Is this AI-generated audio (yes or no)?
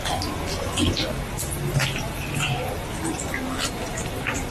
no